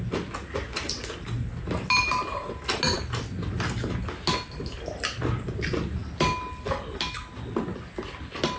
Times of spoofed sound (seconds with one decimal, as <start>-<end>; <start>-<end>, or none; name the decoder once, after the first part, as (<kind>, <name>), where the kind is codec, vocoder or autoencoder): none